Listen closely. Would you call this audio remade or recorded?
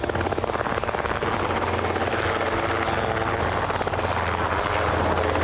recorded